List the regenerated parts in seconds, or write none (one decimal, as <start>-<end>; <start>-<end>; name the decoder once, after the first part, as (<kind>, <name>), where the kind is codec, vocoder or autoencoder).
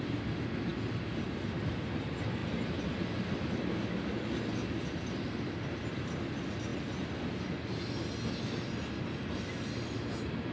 none